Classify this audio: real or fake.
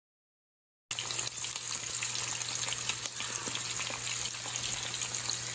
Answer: real